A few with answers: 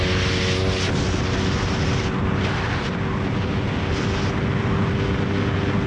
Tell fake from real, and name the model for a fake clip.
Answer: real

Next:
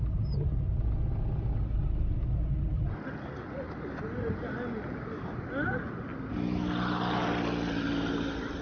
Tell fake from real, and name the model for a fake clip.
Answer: real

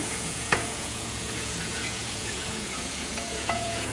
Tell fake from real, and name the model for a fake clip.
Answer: fake, vocoder, Vocos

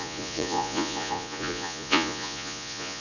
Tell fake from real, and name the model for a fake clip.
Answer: fake, vocoder, Vocos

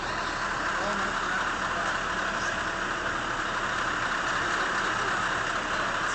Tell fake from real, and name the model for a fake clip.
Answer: real